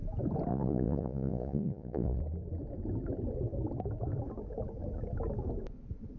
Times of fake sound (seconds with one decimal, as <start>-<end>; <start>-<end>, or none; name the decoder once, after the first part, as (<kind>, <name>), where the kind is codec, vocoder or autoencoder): 0.5-2.2 (vocoder, Vocos)